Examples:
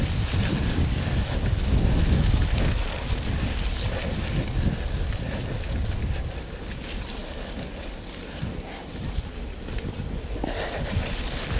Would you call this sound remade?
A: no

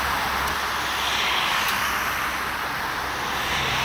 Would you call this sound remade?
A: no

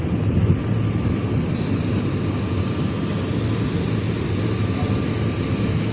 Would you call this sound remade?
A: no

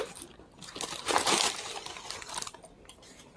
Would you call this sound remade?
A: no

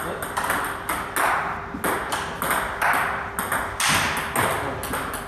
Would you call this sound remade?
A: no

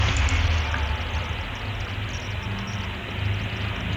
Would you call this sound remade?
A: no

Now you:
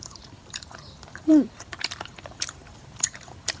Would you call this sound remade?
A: yes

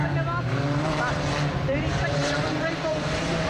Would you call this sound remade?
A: yes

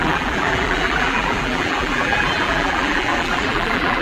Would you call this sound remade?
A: yes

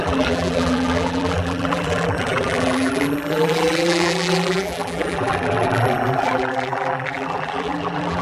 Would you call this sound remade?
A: yes